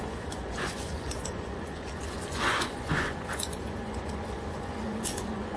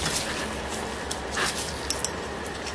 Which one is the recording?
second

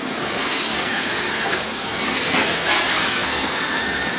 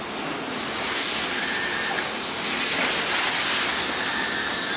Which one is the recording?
second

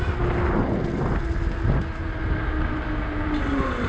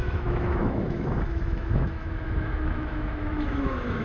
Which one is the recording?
first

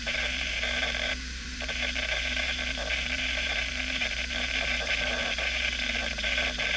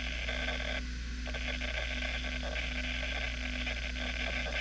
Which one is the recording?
second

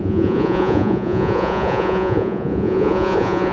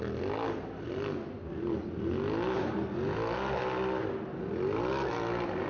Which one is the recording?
second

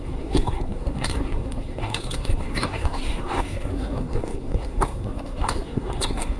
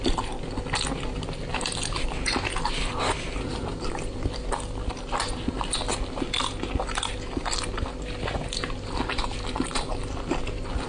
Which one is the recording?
second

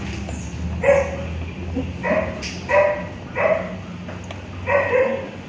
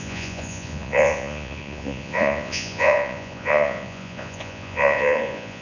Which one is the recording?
first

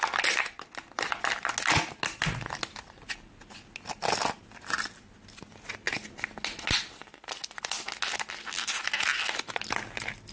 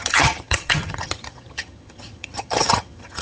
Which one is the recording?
first